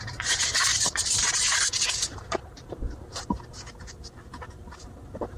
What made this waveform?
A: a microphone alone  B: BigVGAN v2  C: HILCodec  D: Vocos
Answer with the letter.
B